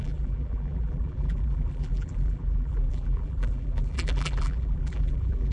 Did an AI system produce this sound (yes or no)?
yes